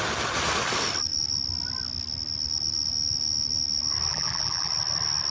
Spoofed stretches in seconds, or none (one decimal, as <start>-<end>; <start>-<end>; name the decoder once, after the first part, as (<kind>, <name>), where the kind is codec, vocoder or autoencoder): 4.1-4.7 (vocoder, BigVGAN v2)